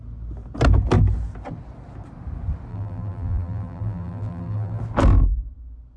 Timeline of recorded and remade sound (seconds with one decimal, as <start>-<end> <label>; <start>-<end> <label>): 0.0-2.7 recorded; 2.7-4.8 remade; 4.8-6.0 recorded